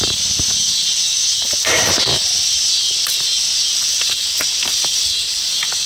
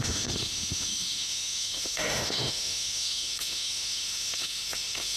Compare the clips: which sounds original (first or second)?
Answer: first